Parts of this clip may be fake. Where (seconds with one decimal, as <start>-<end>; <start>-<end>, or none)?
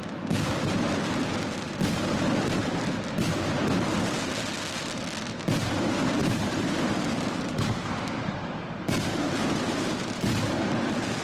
6.2-10.7